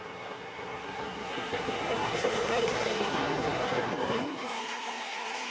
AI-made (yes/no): yes